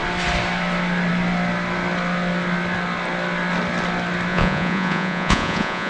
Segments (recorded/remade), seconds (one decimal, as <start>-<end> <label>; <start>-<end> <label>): 0.0-4.3 recorded; 4.3-5.9 remade